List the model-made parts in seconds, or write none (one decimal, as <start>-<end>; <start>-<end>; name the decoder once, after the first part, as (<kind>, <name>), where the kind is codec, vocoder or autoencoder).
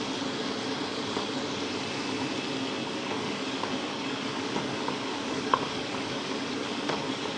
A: 0.9-1.4 (codec, DAC); 2.8-7.4